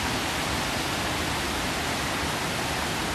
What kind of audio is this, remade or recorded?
recorded